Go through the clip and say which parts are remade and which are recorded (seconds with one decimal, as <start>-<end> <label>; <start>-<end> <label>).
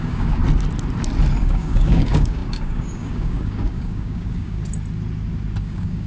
0.0-0.4 remade; 0.4-1.4 recorded; 1.4-4.6 remade; 4.6-5.6 recorded; 5.6-6.1 remade